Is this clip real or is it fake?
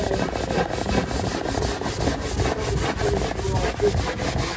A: real